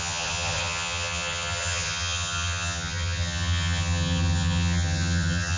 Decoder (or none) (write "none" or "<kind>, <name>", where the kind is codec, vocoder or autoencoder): vocoder, HiFi-GAN